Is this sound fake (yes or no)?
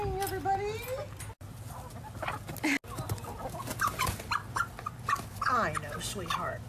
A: no